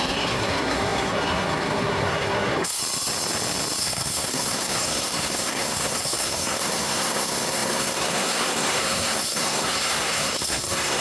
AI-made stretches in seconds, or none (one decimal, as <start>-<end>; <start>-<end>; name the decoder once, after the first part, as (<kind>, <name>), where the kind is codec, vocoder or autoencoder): 0.0-2.8 (codec, SNAC); 3.8-11.0